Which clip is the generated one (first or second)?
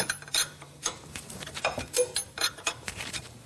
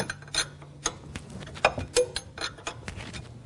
first